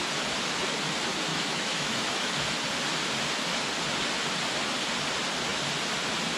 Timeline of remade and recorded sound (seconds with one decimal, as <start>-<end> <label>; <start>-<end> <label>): 0.0-1.3 recorded; 1.3-2.3 remade; 2.3-6.4 recorded